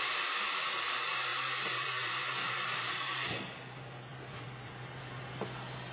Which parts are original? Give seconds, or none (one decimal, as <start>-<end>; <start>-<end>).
0.0-1.3; 3.4-4.1; 4.9-5.9